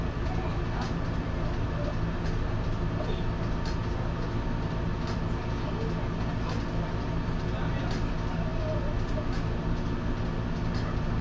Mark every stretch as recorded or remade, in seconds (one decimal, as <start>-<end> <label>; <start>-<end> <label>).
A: 0.0-11.2 recorded